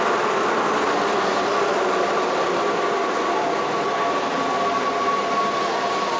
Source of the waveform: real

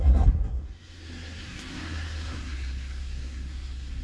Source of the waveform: fake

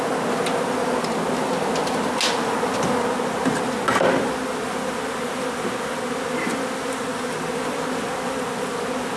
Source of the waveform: real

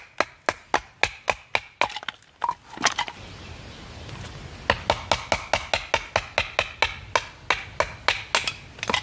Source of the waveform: real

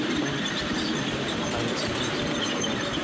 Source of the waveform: real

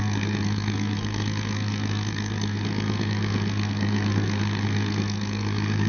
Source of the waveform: fake